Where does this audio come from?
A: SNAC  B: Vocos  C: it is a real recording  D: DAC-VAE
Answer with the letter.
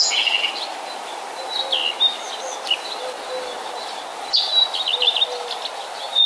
C